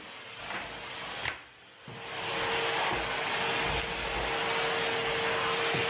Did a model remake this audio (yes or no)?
no